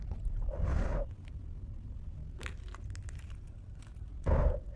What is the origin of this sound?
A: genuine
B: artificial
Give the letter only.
A